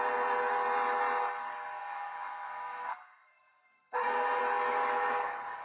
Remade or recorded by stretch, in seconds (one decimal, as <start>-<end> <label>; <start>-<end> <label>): 0.0-1.8 recorded; 1.8-4.4 remade; 4.4-5.6 recorded